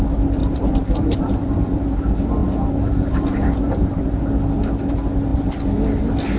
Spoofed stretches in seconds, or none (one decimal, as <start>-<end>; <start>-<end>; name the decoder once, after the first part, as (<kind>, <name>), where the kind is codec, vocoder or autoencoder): 0.4-2.0 (vocoder, BigVGAN v2); 2.4-4.3